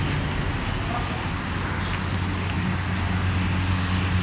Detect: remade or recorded recorded